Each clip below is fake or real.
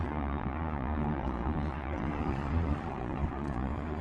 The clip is fake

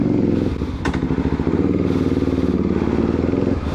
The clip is real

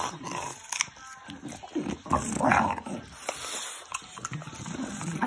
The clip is real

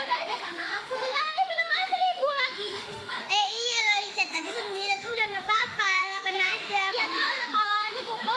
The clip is fake